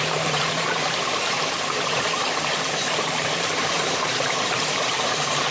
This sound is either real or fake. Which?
fake